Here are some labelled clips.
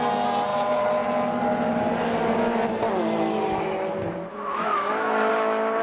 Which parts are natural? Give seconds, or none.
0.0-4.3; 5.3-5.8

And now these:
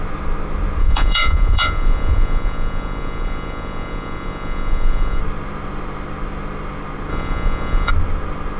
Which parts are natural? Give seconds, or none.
0.0-0.8; 5.2-7.1; 7.9-8.6

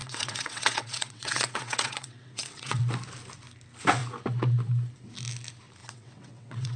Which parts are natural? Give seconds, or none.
2.8-5.8

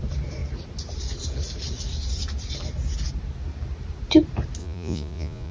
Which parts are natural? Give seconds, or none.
0.0-4.6

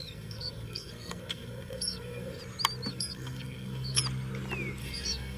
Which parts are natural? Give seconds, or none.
2.4-2.9; 4.0-4.8